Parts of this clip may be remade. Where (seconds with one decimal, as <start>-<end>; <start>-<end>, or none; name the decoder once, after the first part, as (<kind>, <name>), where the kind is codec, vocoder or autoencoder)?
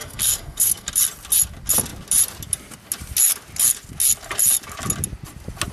0.0-0.9 (codec, SNAC)